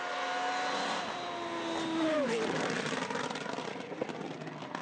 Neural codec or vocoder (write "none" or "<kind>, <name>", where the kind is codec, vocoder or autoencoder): none